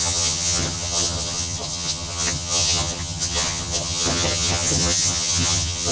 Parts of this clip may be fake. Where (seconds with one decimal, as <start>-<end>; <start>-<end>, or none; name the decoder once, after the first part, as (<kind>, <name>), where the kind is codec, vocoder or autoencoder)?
0.0-5.9 (vocoder, HiFi-GAN)